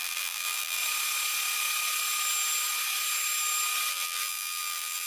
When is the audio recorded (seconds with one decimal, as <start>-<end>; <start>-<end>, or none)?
0.8-3.9